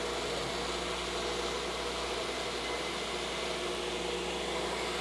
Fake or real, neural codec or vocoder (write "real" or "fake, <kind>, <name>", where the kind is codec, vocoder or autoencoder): real